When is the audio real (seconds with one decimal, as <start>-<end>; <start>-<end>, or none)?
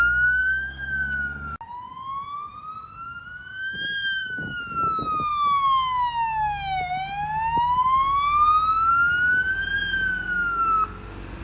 0.0-0.4; 0.9-2.9; 4.6-11.4